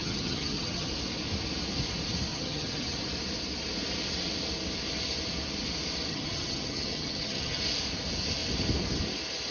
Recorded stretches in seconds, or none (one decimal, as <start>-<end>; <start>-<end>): 0.9-2.3; 3.0-6.1; 7.6-9.5